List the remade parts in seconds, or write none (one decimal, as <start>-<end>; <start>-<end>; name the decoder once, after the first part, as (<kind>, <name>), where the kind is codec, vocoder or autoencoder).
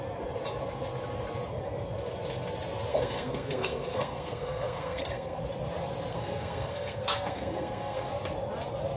2.9-5.4 (codec, SNAC); 6.1-8.1